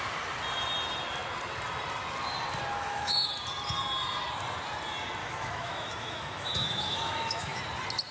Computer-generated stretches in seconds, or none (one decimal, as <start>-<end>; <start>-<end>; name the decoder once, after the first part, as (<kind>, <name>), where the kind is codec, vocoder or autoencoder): 2.7-3.3 (autoencoder, DAC-VAE); 5.2-7.6